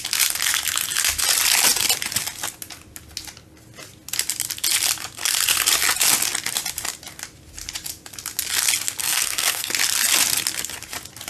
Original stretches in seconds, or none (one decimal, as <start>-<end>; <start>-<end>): 0.0-9.0; 9.7-11.3